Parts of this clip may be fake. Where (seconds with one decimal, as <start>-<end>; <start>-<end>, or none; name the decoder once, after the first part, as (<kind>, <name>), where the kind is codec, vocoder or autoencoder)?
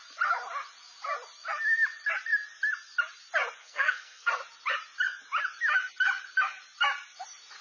3.6-4.3 (codec, SNAC)